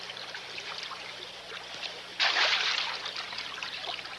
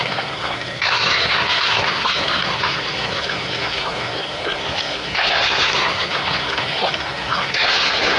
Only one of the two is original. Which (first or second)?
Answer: first